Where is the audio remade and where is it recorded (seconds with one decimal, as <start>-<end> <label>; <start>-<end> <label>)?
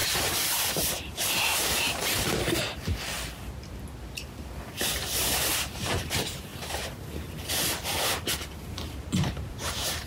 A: 0.0-2.3 remade; 2.3-5.5 recorded; 5.5-6.5 remade; 6.5-7.7 recorded; 7.7-10.1 remade